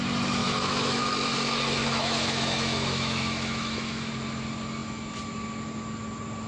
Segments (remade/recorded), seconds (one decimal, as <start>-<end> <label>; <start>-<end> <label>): 0.0-0.4 recorded; 0.4-1.0 remade; 1.0-1.8 recorded; 1.8-4.1 remade; 4.1-6.5 recorded